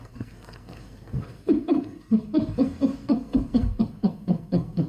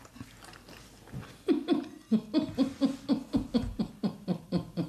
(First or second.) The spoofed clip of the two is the first